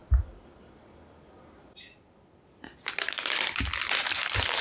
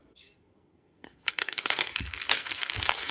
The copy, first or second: second